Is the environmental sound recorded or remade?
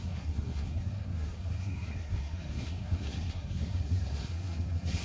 remade